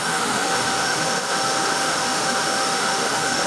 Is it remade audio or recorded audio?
remade